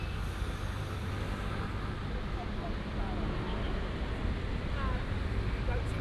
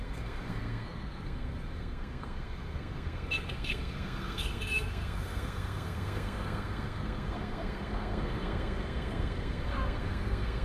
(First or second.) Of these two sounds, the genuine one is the first